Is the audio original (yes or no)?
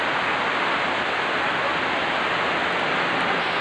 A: yes